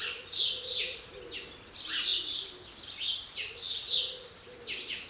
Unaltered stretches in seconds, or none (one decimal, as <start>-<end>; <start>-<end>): 0.0-5.1